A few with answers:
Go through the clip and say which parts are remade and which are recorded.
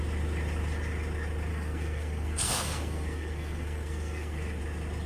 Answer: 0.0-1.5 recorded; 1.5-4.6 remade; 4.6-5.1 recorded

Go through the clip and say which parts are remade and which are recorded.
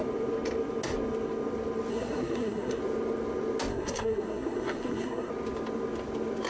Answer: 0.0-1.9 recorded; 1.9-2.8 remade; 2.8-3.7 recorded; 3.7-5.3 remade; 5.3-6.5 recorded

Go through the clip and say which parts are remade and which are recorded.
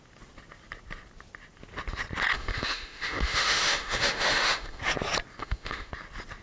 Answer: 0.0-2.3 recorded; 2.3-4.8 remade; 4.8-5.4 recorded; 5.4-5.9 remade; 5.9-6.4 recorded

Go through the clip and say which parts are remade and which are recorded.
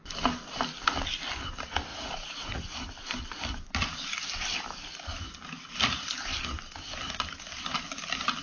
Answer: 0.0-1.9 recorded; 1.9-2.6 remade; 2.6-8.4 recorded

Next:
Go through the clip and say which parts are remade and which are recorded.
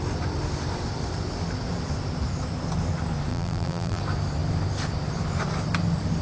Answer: 0.0-3.3 recorded; 3.3-4.0 remade; 4.0-6.2 recorded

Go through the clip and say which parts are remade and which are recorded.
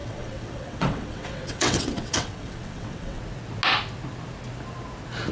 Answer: 0.0-3.2 remade; 3.2-5.3 recorded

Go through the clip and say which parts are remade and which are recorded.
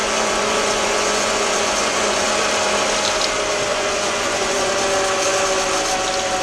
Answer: 0.0-2.3 remade; 2.3-3.7 recorded; 3.7-4.7 remade; 4.7-6.4 recorded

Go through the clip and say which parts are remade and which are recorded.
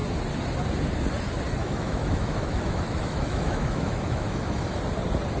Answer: 0.0-1.6 recorded; 1.6-4.8 remade; 4.8-5.4 recorded